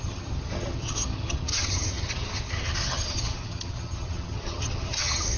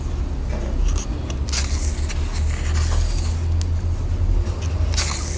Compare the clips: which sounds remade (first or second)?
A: first